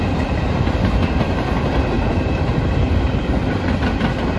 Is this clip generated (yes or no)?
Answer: no